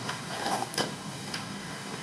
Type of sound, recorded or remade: remade